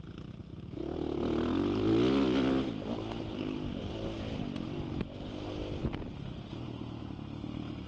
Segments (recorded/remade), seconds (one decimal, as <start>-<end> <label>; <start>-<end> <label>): 0.0-7.9 recorded